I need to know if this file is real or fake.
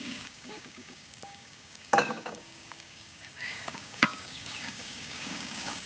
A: fake